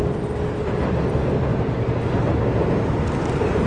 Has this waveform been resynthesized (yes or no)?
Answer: no